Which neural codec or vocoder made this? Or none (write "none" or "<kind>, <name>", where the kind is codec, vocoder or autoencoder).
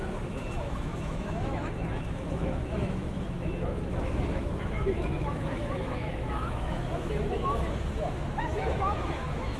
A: autoencoder, DAC-VAE